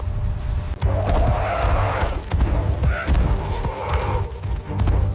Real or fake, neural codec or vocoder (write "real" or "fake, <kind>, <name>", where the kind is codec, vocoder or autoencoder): real